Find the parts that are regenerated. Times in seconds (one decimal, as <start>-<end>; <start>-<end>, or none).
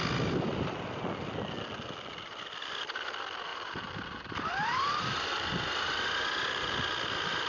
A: 3.5-5.5